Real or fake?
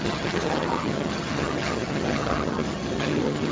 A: fake